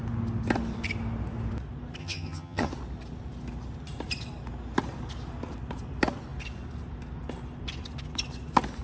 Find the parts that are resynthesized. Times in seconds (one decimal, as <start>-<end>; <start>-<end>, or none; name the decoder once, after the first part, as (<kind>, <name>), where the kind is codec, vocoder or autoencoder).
2.0-2.7 (vocoder, HiFi-GAN)